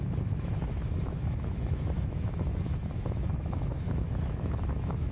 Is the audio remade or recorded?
remade